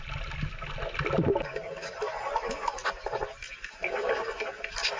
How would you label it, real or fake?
real